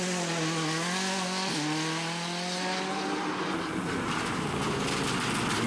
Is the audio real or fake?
real